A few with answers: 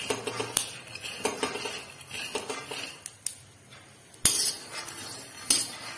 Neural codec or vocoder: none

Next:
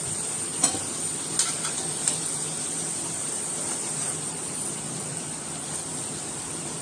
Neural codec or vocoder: none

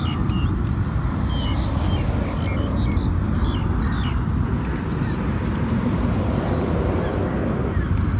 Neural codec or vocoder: none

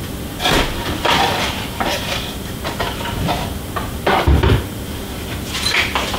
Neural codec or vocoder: vocoder, BigVGAN v2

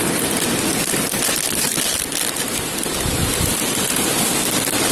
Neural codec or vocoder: none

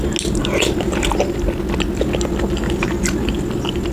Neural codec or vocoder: none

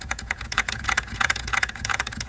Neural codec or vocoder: vocoder, Vocos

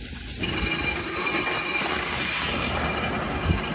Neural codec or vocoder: none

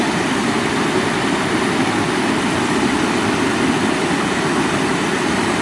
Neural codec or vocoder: none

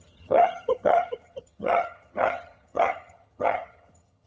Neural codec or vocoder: vocoder, HiFi-GAN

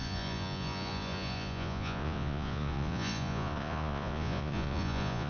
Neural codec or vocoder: vocoder, Vocos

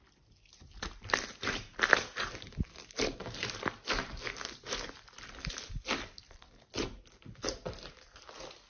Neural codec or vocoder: none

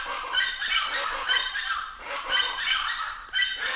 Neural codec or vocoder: vocoder, BigVGAN v2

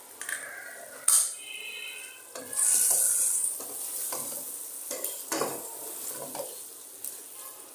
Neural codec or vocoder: none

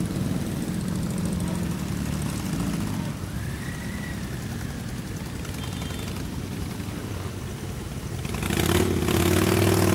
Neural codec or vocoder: none